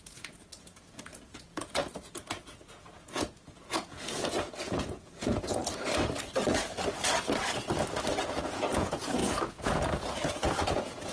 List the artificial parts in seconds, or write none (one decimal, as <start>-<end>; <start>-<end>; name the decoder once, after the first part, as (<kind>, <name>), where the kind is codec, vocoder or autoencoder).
0.0-5.6 (vocoder, Vocos); 8.3-11.1